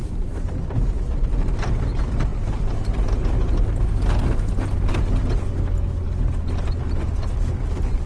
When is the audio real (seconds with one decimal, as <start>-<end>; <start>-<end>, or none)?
0.0-8.1